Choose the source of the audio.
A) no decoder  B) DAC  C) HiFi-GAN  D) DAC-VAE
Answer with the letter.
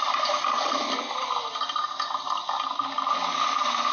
A